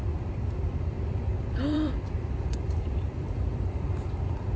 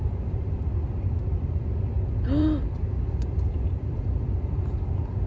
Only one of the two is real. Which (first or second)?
second